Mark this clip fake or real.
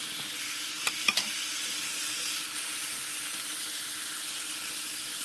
real